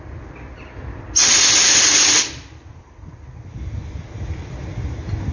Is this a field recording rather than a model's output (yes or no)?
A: yes